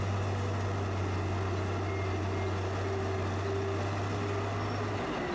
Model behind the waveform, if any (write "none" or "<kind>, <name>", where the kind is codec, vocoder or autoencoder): none